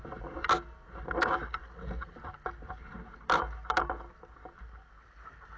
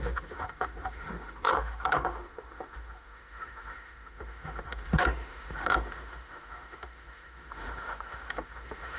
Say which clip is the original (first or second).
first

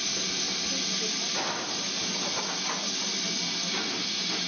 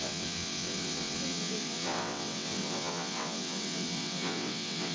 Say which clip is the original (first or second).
first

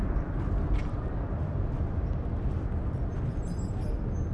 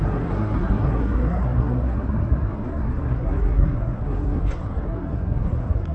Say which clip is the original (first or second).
first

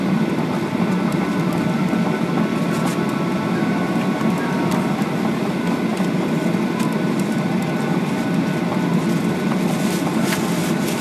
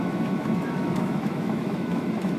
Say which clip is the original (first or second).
first